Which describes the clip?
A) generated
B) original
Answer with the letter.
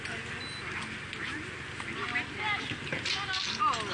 B